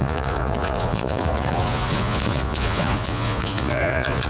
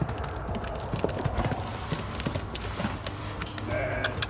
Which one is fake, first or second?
first